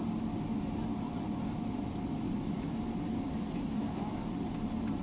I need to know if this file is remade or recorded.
recorded